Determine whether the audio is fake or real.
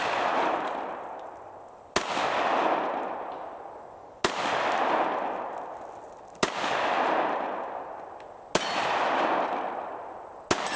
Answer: real